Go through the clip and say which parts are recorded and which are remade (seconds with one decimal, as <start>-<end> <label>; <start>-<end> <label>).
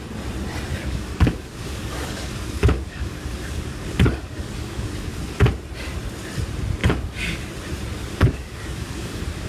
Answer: 0.0-0.7 recorded; 0.7-5.1 remade; 5.1-6.8 recorded; 6.8-7.5 remade; 7.5-8.0 recorded; 8.0-9.5 remade